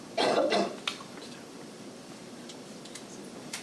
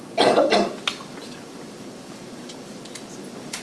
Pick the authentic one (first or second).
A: second